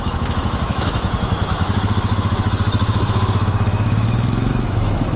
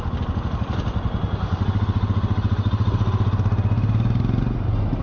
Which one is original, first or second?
second